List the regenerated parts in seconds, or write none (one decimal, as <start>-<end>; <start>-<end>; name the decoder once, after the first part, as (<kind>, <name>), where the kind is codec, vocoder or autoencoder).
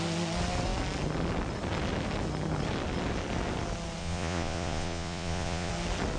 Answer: 4.0-5.7 (vocoder, Vocos)